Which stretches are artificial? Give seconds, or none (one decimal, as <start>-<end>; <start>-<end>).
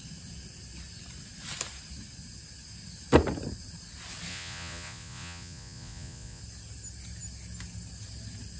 4.3-6.4